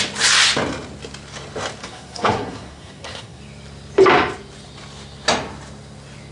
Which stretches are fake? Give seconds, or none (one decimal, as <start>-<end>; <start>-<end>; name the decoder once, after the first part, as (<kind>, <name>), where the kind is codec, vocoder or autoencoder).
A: 1.8-3.4 (codec, SNAC)